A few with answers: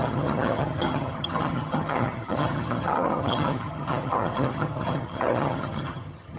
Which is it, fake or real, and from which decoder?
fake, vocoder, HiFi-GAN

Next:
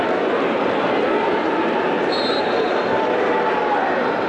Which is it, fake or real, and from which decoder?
real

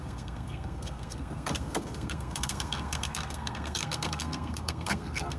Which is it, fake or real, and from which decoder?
fake, codec, SNAC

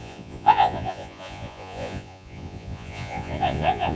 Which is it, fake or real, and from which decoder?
fake, vocoder, Vocos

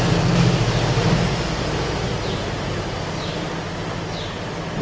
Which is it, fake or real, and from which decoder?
real